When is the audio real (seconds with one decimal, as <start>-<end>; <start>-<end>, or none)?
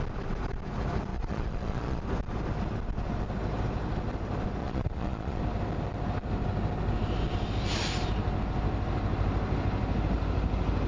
0.0-1.1; 2.0-4.6; 5.4-10.9